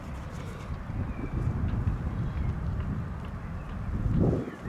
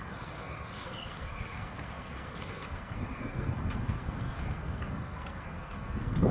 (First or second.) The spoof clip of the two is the second